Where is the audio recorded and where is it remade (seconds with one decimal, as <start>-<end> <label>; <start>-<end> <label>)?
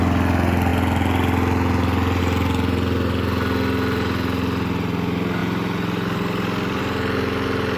0.0-7.8 recorded